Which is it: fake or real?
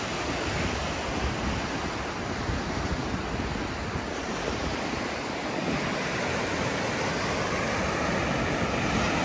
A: real